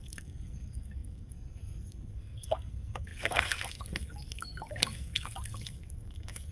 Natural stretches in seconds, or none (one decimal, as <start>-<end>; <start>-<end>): none